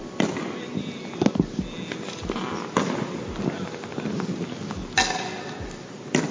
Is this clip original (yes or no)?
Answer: yes